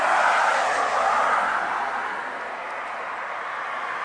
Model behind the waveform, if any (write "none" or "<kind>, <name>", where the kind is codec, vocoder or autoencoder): none